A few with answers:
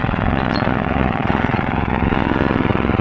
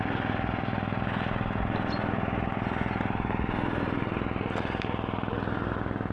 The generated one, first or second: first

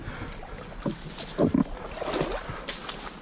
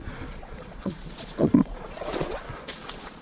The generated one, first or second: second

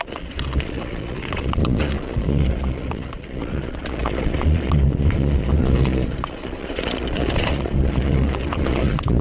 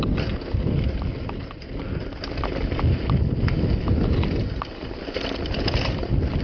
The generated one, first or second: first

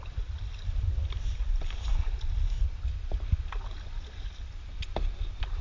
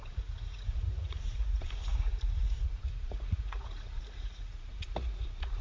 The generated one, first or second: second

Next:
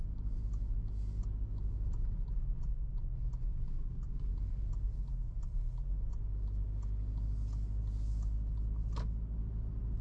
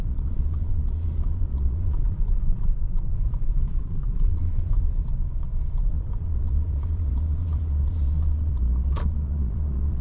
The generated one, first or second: second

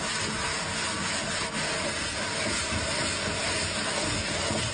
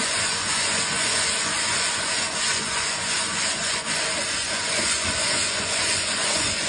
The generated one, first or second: second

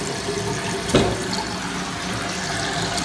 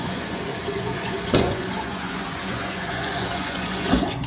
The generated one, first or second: second